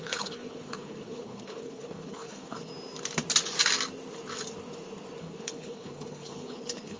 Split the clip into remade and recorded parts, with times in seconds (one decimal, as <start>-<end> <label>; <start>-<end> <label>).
0.0-2.7 remade; 2.7-5.2 recorded; 5.2-7.0 remade